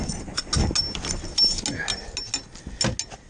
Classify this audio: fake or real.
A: real